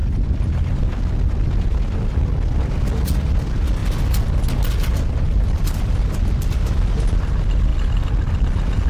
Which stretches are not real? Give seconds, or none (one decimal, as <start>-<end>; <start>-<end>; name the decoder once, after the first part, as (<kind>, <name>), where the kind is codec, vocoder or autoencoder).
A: none